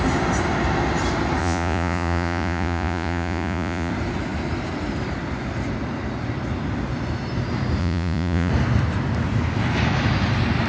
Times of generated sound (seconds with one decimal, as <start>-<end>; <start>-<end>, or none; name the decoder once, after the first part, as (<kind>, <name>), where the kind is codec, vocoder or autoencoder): 1.4-3.9 (vocoder, Vocos); 7.8-8.5